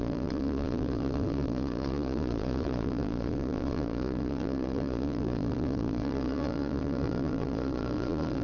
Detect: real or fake fake